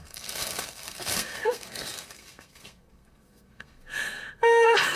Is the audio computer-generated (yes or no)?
yes